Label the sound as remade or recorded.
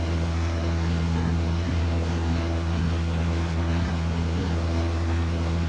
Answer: remade